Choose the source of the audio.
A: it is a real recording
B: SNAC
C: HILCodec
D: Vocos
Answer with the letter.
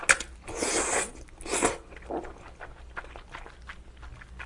A